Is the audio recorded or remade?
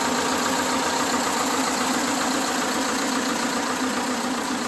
recorded